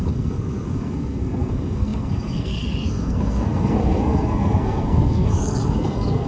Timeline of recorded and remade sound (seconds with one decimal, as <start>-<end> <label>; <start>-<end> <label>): 0.0-6.3 remade